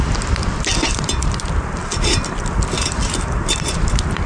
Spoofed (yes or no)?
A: no